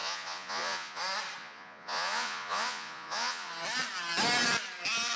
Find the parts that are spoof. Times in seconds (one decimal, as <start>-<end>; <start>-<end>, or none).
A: 0.0-1.0; 1.4-3.5